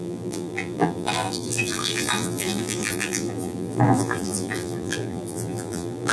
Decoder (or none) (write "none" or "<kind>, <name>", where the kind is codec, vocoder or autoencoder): vocoder, BigVGAN v2